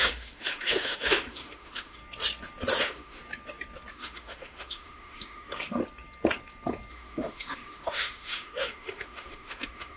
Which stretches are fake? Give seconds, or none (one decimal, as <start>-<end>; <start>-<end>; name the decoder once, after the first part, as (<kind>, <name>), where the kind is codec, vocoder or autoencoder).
0.0-2.0 (autoencoder, DAC-VAE); 2.8-3.2; 3.9-5.8; 6.9-10.0

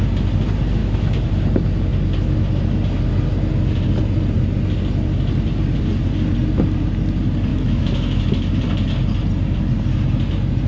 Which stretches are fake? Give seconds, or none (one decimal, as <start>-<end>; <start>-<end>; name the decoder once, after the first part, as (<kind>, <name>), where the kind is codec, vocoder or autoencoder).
0.8-1.3 (autoencoder, DAC-VAE); 7.5-8.3